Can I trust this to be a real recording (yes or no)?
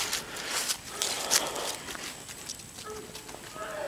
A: yes